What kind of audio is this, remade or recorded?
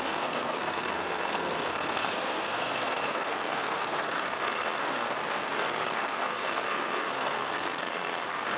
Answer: remade